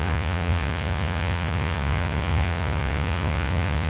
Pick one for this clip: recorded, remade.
remade